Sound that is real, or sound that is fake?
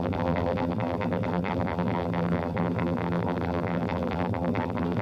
fake